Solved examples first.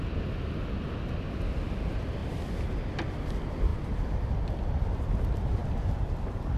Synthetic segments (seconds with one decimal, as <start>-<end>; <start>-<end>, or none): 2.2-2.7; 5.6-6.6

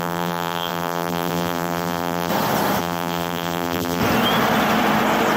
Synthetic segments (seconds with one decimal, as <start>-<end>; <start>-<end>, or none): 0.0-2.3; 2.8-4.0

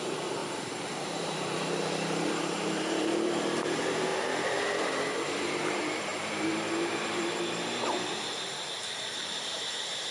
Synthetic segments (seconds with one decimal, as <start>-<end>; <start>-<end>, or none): 0.0-4.1; 5.4-10.1

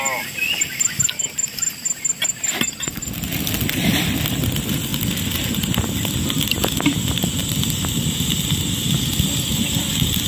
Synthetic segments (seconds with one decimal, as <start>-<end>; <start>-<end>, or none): 7.4-8.3